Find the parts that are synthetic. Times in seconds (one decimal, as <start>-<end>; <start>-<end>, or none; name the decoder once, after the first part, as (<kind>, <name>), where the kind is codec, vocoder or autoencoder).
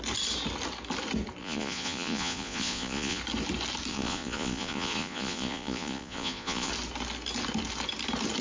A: 1.4-3.2 (vocoder, Vocos); 3.9-6.7